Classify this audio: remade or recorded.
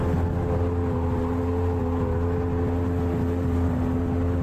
recorded